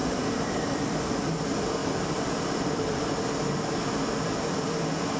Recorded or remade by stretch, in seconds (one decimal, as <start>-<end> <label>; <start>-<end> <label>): 0.0-1.3 remade; 1.3-1.8 recorded; 1.8-3.1 remade; 3.1-5.2 recorded